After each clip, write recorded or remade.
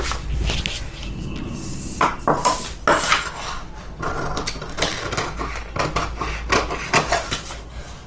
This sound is recorded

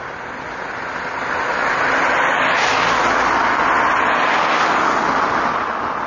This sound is recorded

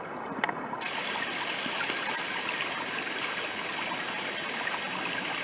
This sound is recorded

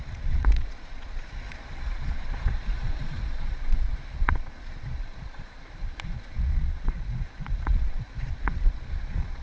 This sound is remade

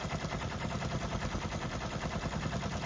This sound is recorded